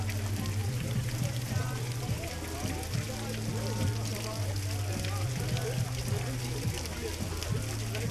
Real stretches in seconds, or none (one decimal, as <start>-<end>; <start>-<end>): 0.0-0.6; 2.3-8.1